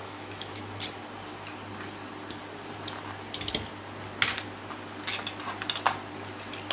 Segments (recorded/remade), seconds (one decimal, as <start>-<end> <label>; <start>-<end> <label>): 0.0-0.6 remade; 0.6-6.7 recorded

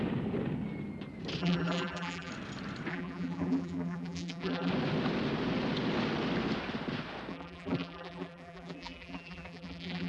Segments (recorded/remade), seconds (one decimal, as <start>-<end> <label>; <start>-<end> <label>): 0.0-1.4 recorded; 1.4-2.3 remade; 2.3-2.9 recorded; 2.9-4.7 remade; 4.7-7.3 recorded; 7.3-10.1 remade

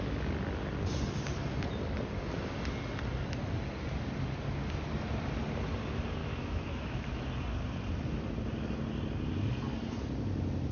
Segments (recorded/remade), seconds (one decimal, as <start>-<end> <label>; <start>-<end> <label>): 0.0-6.2 recorded; 6.2-7.2 remade; 7.2-10.7 recorded

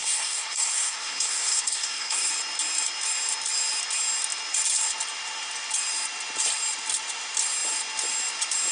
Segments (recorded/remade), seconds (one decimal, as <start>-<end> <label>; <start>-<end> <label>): 0.0-2.3 remade; 2.3-8.7 recorded

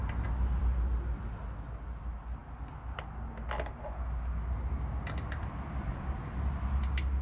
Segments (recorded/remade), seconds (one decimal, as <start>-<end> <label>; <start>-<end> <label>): 0.0-7.2 recorded

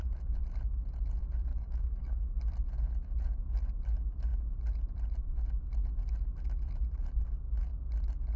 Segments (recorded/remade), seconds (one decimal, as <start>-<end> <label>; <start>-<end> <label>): 0.0-1.5 recorded; 1.5-2.2 remade; 2.2-8.4 recorded